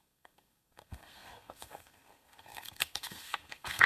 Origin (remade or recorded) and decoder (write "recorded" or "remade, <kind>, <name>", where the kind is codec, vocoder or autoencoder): remade, codec, SNAC